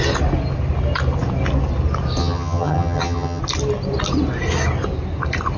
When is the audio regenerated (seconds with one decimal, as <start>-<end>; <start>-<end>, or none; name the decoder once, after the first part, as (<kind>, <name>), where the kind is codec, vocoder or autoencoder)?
2.2-3.4 (vocoder, HiFi-GAN)